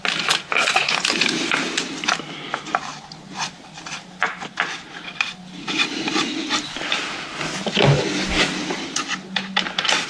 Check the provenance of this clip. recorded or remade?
recorded